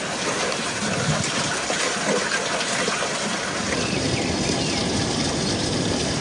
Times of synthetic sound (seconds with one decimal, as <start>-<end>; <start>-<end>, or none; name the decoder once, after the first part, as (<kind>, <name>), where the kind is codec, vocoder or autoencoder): 5.0-6.2 (vocoder, BigVGAN v2)